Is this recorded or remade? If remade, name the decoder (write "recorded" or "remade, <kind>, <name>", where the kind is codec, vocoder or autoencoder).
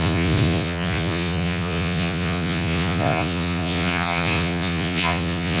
remade, vocoder, Vocos